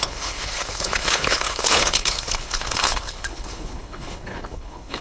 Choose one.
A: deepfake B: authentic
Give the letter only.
A